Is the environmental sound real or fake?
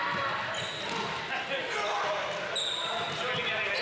real